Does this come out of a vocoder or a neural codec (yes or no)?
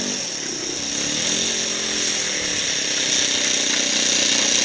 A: no